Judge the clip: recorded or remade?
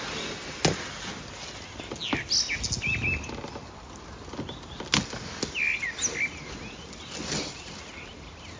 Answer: recorded